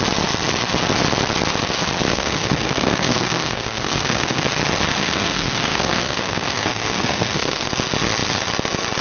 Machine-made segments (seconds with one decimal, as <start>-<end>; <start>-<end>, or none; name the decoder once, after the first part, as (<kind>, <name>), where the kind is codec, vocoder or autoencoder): 2.1-4.5 (codec, SNAC); 5.0-7.7